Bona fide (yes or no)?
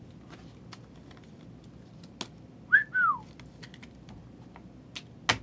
yes